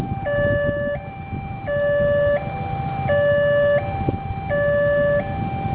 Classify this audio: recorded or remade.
recorded